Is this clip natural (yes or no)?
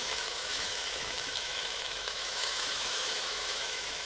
no